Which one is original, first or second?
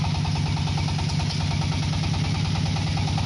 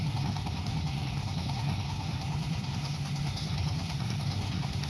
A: first